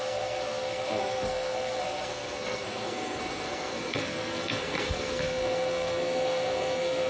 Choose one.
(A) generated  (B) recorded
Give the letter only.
A